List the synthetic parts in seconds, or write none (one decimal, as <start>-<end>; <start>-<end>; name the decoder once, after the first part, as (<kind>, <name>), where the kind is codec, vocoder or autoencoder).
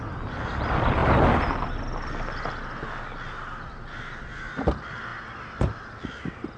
none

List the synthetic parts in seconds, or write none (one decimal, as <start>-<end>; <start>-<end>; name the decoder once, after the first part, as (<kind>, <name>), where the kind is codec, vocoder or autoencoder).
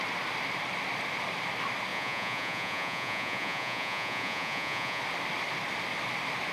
1.9-5.0 (vocoder, Vocos)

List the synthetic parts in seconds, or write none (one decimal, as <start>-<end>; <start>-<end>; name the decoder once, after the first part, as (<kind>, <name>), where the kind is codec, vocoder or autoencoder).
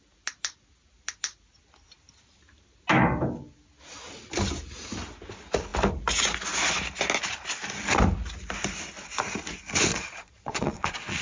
9.9-11.2 (vocoder, Vocos)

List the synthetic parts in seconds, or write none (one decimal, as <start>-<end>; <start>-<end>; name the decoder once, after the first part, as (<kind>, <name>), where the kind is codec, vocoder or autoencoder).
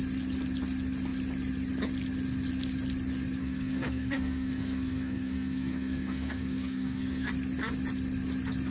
3.4-7.3 (codec, SNAC)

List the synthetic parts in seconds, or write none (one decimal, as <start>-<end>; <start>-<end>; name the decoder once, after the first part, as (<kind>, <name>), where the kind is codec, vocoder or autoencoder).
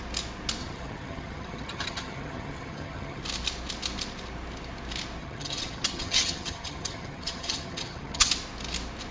0.6-3.2 (vocoder, HiFi-GAN); 5.2-8.3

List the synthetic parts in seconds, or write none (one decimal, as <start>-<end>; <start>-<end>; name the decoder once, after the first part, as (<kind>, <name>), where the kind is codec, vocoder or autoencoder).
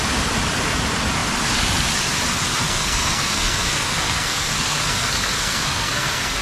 2.6-6.4 (codec, SNAC)